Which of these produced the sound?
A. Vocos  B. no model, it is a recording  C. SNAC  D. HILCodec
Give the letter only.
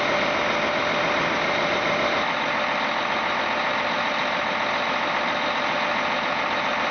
B